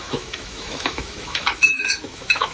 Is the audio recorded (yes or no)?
no